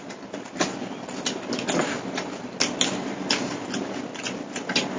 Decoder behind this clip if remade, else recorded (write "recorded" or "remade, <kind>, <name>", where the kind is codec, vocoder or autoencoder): recorded